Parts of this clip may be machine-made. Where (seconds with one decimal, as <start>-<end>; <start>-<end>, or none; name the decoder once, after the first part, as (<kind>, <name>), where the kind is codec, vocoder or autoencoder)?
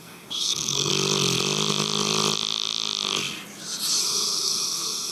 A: 0.0-0.9 (codec, SNAC); 4.0-5.1